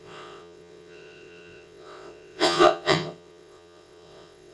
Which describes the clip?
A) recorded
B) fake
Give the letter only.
B